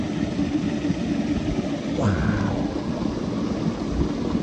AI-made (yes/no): no